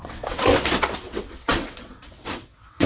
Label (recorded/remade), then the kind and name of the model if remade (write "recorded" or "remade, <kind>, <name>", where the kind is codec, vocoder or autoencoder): remade, vocoder, WaveNeXt